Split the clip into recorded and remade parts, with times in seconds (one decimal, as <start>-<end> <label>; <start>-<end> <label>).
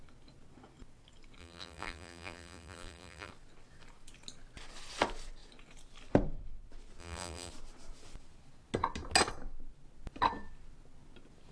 0.0-1.4 recorded; 1.4-3.3 remade; 3.3-7.0 recorded; 7.0-7.5 remade; 7.5-11.5 recorded